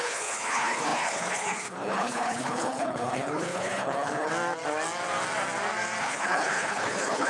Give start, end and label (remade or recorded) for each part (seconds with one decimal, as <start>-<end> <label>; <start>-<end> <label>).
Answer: 0.0-4.3 remade; 4.3-6.0 recorded; 6.0-7.3 remade